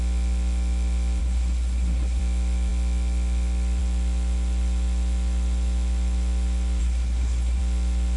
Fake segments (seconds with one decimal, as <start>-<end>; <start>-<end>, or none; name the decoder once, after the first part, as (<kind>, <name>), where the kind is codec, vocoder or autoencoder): 1.2-2.2 (codec, SNAC); 6.8-7.6